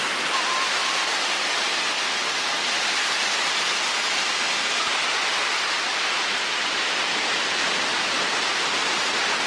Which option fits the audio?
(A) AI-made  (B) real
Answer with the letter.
B